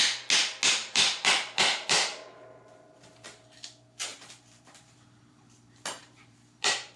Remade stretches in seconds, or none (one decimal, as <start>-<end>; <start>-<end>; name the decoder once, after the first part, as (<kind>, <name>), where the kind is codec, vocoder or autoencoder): 0.8-3.4 (vocoder, BigVGAN v2); 4.1-7.0